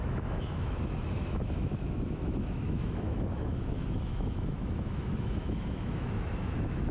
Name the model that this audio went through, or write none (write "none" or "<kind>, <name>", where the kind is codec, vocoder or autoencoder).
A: autoencoder, DAC-VAE